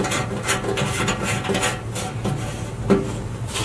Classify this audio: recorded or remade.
recorded